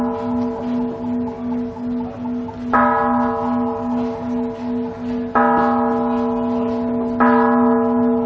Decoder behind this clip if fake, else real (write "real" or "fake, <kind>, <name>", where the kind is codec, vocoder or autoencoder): real